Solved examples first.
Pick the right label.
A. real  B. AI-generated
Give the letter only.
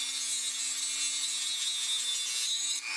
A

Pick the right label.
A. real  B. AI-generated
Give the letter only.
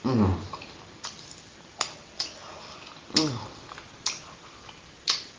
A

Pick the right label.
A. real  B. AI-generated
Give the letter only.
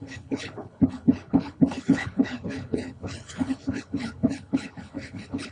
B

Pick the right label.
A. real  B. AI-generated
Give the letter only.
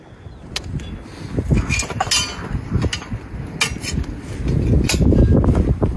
A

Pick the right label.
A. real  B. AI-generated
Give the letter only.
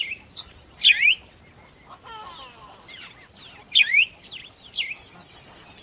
A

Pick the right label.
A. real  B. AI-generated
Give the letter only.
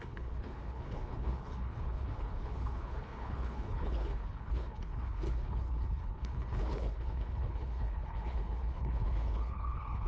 B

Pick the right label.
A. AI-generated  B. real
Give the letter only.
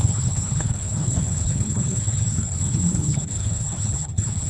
A